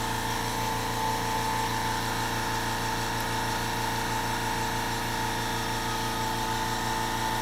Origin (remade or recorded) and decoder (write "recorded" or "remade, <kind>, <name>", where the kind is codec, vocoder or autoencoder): recorded